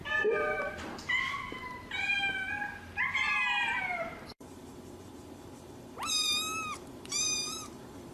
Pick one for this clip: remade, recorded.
remade